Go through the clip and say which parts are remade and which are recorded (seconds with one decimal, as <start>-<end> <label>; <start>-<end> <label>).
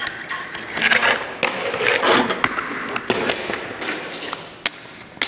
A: 0.0-5.3 recorded